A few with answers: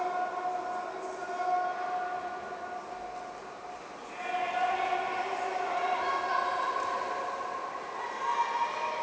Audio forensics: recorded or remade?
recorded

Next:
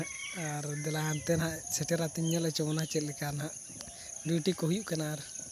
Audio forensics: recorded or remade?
recorded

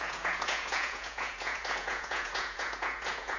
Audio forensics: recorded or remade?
remade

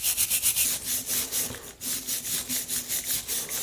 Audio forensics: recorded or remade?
recorded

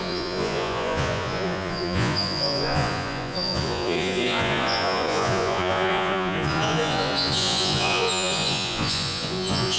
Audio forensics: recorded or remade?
remade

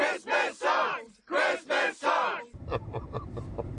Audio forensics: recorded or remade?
recorded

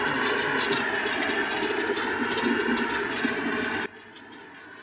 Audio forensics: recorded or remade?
recorded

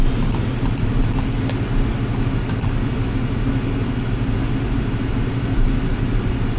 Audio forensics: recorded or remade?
recorded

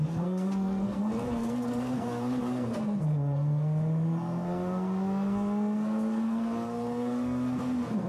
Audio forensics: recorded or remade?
remade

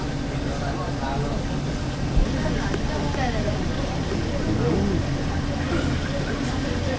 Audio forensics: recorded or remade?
recorded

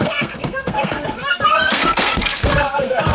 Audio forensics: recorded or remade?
remade